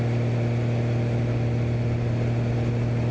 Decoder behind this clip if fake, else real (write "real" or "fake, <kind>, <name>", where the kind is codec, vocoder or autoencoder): real